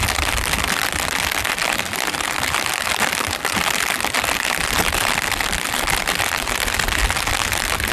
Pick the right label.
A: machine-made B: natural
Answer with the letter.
B